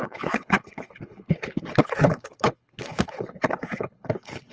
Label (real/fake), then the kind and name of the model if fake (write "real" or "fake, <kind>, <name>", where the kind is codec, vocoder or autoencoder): fake, codec, HILCodec